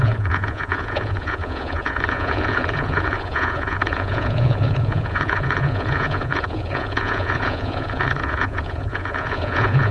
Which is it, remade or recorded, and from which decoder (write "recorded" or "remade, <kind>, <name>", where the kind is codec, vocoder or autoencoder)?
remade, vocoder, Vocos